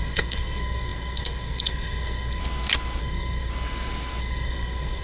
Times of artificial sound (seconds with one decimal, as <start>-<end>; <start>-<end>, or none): 0.0-2.4; 3.0-3.5; 4.2-5.0